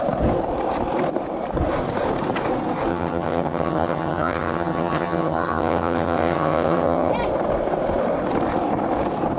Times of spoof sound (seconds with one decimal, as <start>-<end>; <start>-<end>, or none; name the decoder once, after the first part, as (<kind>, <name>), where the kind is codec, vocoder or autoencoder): 2.9-7.1 (vocoder, HiFi-GAN)